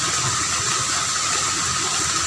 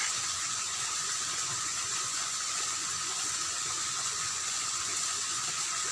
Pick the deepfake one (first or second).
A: second